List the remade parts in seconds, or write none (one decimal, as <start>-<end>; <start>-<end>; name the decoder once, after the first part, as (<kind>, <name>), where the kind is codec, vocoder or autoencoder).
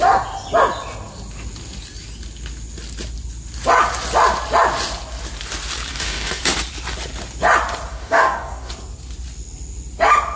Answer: 5.9-6.4 (codec, DAC); 7.9-8.7